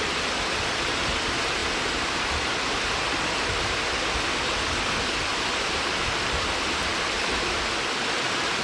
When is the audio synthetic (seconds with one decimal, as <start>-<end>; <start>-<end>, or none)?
1.6-2.2; 5.3-6.1